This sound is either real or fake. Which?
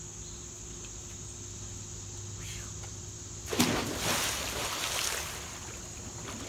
real